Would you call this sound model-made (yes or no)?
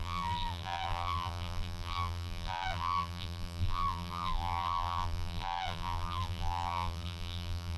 yes